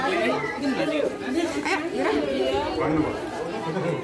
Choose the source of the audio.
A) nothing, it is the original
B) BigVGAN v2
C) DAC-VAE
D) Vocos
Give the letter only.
A